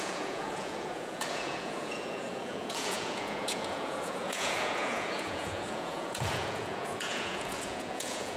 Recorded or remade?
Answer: remade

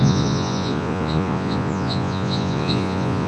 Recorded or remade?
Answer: remade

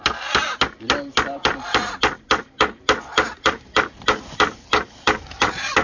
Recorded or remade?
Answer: recorded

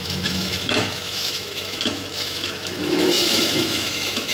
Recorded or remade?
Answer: remade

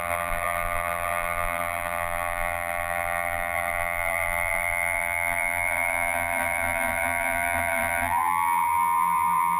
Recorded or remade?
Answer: remade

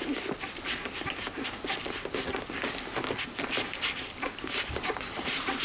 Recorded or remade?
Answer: recorded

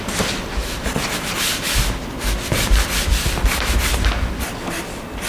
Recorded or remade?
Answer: recorded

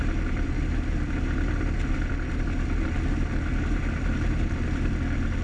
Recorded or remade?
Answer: recorded